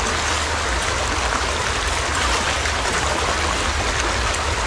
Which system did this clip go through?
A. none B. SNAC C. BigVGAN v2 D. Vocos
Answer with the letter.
A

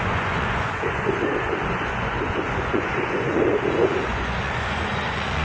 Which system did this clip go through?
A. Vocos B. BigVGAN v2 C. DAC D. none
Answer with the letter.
A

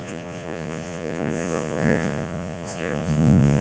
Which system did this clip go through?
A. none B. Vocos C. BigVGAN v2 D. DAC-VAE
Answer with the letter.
B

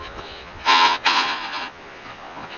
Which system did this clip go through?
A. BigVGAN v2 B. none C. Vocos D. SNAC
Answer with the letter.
C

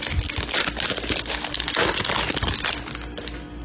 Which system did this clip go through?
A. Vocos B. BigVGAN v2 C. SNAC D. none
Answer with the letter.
D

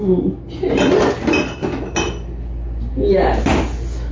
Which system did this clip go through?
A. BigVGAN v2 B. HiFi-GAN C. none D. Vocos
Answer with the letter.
C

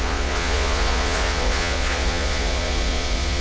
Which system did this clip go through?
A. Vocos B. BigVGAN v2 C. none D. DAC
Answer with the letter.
A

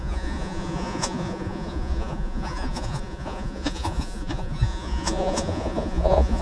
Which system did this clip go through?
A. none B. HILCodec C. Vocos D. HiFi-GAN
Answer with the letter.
C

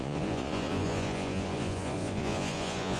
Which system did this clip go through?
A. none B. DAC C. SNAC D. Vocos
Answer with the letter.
D